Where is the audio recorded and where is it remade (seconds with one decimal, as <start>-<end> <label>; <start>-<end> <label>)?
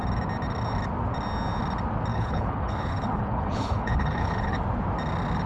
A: 0.0-2.1 recorded; 2.1-4.6 remade; 4.6-5.5 recorded